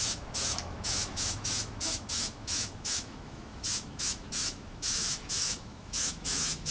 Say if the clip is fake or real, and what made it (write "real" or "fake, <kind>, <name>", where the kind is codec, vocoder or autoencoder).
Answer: fake, autoencoder, DAC-VAE